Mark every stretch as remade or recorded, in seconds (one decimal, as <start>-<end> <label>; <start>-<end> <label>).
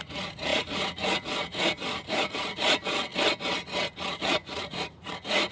0.0-3.1 remade; 3.1-4.1 recorded; 4.1-5.5 remade